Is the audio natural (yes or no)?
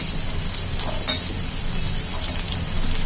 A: yes